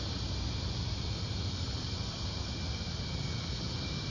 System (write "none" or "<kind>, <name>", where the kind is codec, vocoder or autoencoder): none